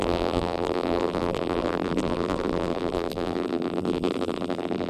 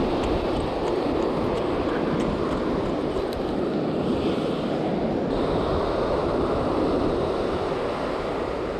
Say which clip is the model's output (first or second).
first